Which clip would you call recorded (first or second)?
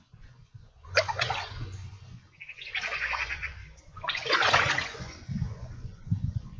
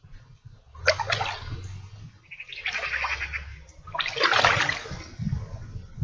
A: second